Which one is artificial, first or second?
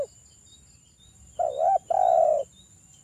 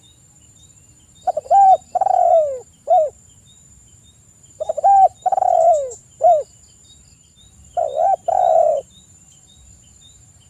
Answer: second